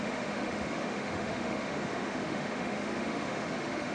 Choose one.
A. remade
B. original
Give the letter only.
A